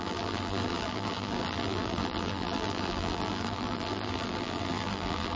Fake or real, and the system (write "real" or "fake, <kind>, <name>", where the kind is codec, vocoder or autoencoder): fake, vocoder, BigVGAN v2